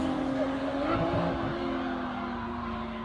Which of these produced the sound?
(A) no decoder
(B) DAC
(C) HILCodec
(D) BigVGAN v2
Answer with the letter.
B